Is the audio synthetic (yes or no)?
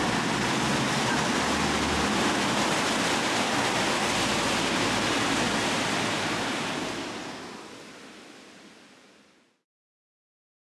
no